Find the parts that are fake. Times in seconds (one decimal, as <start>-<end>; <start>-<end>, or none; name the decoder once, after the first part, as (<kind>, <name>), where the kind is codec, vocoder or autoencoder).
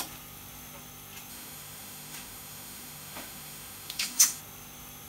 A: 1.3-4.4 (autoencoder, DAC-VAE)